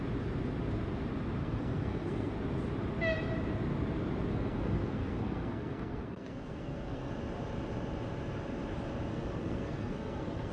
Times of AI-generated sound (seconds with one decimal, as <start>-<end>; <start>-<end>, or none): 1.4-2.3; 4.3-7.1; 9.1-10.5